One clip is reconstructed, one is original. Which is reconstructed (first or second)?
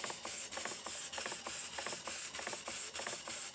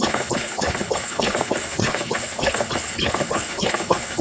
second